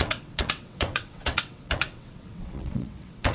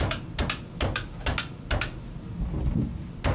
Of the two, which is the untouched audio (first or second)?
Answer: second